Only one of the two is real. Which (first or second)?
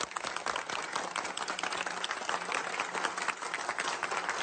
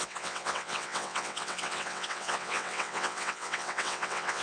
first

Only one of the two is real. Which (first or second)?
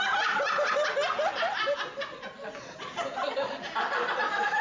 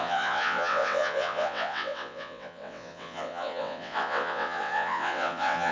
first